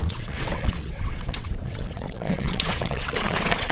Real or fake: fake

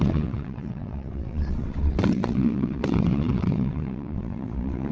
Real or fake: fake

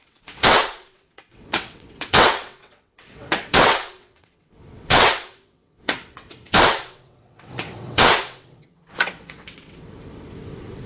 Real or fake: fake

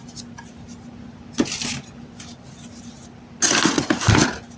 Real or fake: real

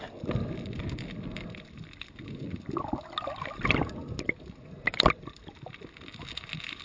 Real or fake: real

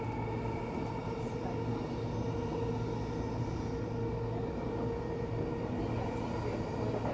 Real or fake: real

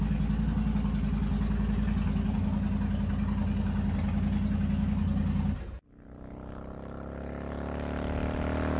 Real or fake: real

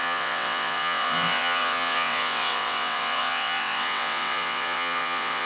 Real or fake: fake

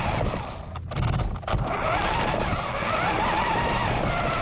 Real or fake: real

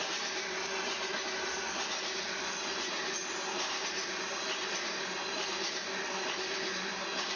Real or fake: real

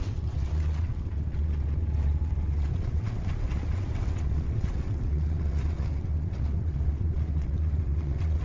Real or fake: fake